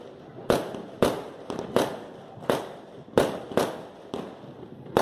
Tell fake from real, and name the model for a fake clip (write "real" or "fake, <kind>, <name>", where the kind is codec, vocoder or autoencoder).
real